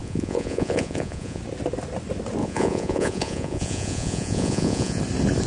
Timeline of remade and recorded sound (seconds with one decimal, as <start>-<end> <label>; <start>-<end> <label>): 0.0-1.4 remade; 1.4-2.4 recorded; 2.4-5.0 remade; 5.0-5.5 recorded